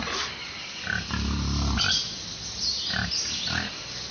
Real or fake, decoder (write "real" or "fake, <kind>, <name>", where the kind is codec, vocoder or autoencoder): real